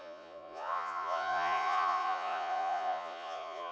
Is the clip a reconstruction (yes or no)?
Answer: yes